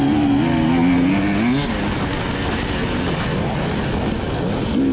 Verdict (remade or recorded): recorded